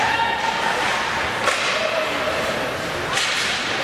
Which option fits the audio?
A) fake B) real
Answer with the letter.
B